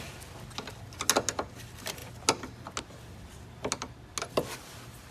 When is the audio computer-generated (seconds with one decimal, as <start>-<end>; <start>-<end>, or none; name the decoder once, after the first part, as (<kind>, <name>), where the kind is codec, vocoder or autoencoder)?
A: none